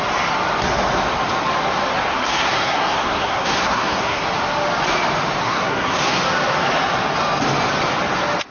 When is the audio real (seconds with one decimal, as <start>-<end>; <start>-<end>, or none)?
0.0-2.1; 4.2-5.4; 6.2-8.5